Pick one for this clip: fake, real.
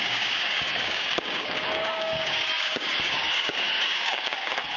fake